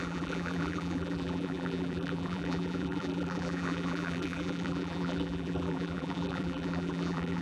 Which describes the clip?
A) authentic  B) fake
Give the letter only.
B